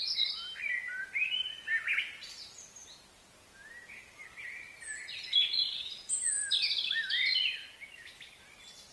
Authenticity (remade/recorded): recorded